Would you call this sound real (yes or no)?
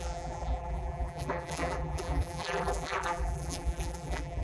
no